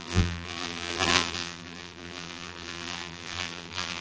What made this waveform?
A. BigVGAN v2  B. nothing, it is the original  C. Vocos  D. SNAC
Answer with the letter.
A